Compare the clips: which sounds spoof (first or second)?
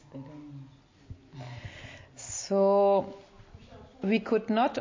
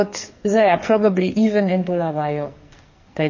second